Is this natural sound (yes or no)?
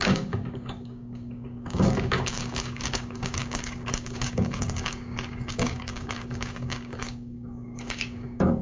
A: no